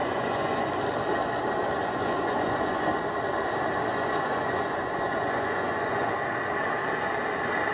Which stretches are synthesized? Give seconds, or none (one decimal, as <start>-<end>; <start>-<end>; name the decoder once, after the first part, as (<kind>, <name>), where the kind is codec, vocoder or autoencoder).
0.0-0.7 (vocoder, Vocos); 1.8-2.9; 3.9-6.1